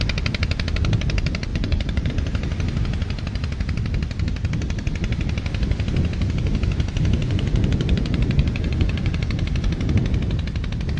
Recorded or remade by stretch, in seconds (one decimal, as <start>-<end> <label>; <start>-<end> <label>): 0.0-1.5 recorded; 1.5-2.1 remade; 2.1-7.2 recorded; 7.2-9.3 remade; 9.3-11.0 recorded

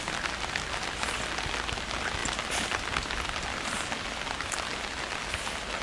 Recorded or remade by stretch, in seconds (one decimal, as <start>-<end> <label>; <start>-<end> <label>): 0.0-5.8 recorded

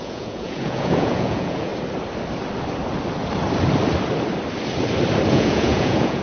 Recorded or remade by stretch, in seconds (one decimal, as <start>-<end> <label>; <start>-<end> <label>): 0.0-1.7 remade; 1.7-5.3 recorded; 5.3-6.2 remade

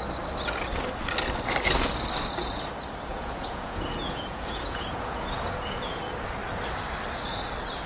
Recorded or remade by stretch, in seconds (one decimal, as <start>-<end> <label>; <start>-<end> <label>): 0.0-3.1 recorded; 3.1-6.0 remade; 6.0-7.9 recorded

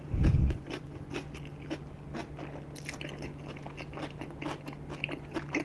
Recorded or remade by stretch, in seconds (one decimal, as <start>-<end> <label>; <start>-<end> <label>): 0.0-0.4 recorded; 0.4-1.1 remade; 1.1-5.6 recorded

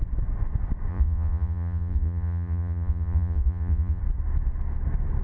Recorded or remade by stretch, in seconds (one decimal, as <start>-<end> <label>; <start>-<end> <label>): 0.0-0.9 recorded; 0.9-4.0 remade; 4.0-5.2 recorded

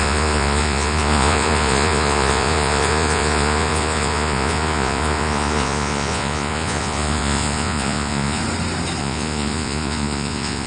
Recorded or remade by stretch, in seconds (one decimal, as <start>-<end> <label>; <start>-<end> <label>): 0.0-8.4 remade; 8.4-9.0 recorded; 9.0-10.7 remade